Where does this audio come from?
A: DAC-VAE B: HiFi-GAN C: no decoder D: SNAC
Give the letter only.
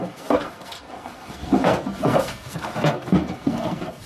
D